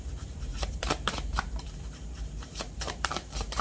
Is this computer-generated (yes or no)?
yes